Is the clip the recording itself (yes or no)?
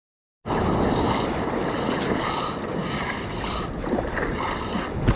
yes